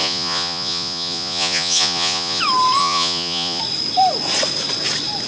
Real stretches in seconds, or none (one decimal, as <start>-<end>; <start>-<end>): 2.4-2.8; 3.6-5.3